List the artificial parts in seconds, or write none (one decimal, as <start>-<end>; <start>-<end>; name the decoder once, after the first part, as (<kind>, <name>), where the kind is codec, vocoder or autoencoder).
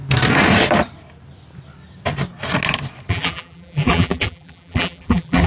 3.1-5.5 (vocoder, BigVGAN v2)